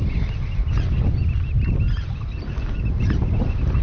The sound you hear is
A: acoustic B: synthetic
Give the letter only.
A